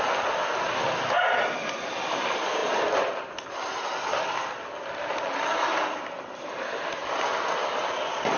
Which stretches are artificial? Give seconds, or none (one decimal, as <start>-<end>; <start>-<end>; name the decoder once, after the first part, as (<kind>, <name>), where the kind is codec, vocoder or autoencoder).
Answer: none